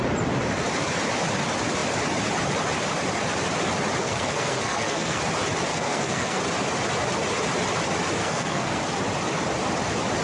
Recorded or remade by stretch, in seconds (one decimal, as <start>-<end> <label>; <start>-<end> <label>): 0.0-4.0 recorded; 4.0-5.2 remade; 5.2-5.7 recorded; 5.7-6.4 remade; 6.4-8.2 recorded; 8.2-8.8 remade; 8.8-10.2 recorded